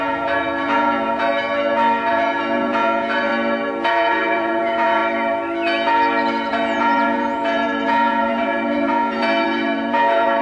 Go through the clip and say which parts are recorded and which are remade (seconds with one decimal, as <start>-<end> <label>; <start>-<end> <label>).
0.0-1.3 remade; 1.3-2.1 recorded; 2.1-3.3 remade; 3.3-3.9 recorded; 3.9-5.0 remade; 5.0-6.5 recorded; 6.5-10.4 remade